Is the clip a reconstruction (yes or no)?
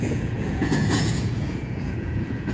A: yes